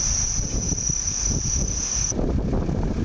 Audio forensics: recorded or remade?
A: recorded